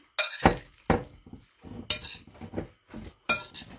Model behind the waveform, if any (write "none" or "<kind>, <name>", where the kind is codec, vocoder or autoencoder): none